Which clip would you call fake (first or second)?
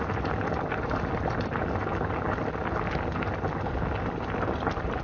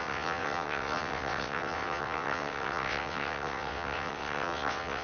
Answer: second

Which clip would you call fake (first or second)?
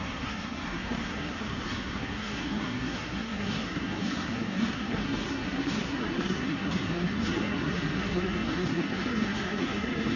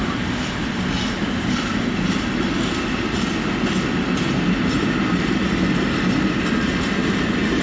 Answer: first